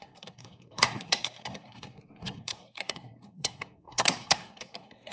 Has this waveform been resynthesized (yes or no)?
yes